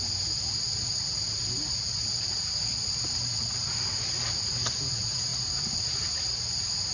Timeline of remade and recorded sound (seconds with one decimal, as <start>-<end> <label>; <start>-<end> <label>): 0.0-6.9 recorded